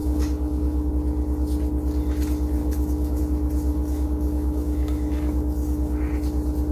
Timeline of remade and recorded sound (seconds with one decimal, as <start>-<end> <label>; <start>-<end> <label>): 0.0-0.9 remade; 0.9-2.6 recorded; 2.6-3.2 remade; 3.2-3.7 recorded; 3.7-6.0 remade; 6.0-6.7 recorded